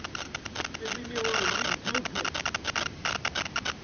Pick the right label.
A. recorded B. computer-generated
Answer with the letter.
A